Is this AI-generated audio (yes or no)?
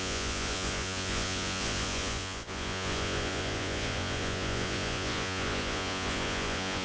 yes